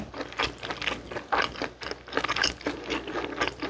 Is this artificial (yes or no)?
no